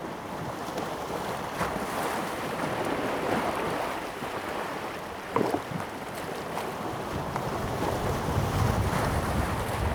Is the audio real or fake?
fake